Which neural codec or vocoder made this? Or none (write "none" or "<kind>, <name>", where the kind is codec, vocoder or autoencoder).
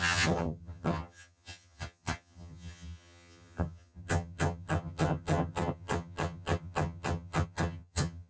vocoder, HiFi-GAN